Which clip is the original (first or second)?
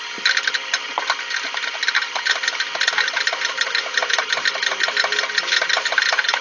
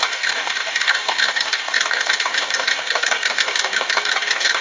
first